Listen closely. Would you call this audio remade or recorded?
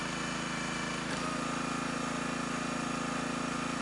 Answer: recorded